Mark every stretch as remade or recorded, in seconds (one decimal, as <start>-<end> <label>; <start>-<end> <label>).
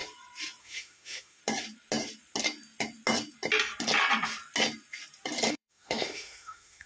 0.0-0.6 recorded; 0.6-1.4 remade; 1.4-5.5 recorded; 5.5-6.9 remade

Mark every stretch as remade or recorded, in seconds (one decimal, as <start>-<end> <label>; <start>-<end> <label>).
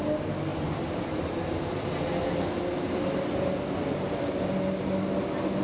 0.0-0.5 recorded; 0.5-2.0 remade; 2.0-5.6 recorded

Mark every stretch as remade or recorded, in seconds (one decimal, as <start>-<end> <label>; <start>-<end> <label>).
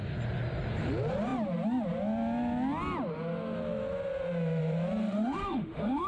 0.0-5.0 recorded; 5.0-6.1 remade